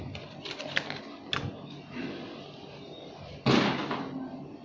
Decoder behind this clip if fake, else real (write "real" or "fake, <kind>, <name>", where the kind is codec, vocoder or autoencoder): real